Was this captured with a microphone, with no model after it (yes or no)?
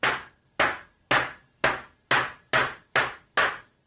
yes